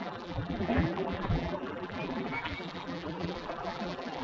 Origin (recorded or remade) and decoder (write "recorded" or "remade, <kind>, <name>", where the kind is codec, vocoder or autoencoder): remade, vocoder, BigVGAN v2